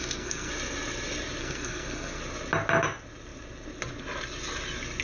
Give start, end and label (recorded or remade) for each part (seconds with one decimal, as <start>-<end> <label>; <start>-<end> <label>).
0.0-0.5 remade; 0.5-1.4 recorded; 1.4-2.2 remade; 2.2-5.0 recorded